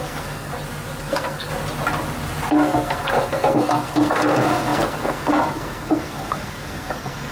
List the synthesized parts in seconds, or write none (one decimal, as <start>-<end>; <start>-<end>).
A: 0.0-0.5; 1.0-1.5; 2.5-7.3